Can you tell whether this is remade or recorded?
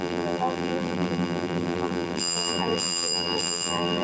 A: remade